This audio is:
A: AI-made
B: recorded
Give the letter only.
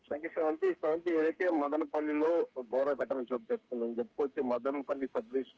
A